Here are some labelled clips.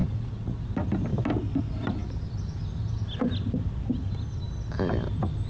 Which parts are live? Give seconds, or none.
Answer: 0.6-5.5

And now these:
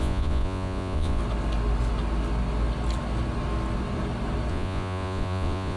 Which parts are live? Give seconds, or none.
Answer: 1.2-4.5

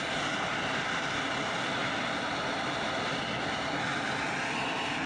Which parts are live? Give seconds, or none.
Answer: 0.0-5.1